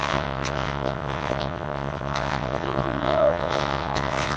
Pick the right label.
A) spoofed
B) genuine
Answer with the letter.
A